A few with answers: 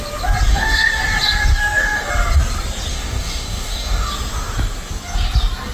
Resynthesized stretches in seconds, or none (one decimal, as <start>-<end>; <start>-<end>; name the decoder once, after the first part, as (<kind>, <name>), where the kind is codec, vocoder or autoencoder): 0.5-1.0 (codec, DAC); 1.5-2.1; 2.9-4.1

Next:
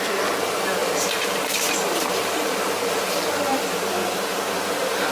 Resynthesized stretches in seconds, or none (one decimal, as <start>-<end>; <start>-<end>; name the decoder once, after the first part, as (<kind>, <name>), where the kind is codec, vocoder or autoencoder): 0.8-3.9 (vocoder, BigVGAN v2)

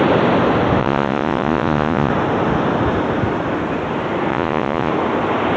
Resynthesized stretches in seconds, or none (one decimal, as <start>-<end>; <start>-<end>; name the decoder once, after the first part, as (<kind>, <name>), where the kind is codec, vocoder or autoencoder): 0.8-2.1 (vocoder, Vocos); 4.3-4.9